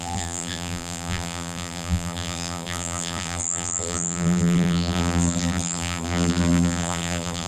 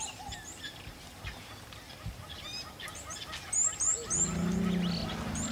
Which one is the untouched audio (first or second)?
second